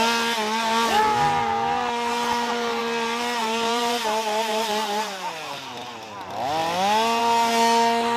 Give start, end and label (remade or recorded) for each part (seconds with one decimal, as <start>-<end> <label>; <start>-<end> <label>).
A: 0.0-2.1 recorded; 2.1-2.8 remade; 2.8-3.4 recorded; 3.4-5.6 remade; 5.6-8.2 recorded